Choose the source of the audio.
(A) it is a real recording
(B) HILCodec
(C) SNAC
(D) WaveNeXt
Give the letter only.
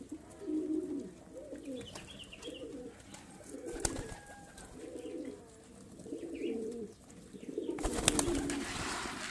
A